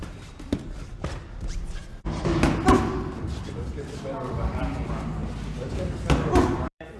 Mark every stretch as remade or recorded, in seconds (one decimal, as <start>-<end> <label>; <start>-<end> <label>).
0.0-1.8 remade; 1.8-3.3 recorded; 3.3-5.2 remade; 5.2-5.7 recorded; 5.7-7.0 remade